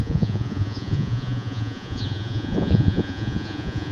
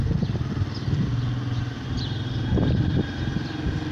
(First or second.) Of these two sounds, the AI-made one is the first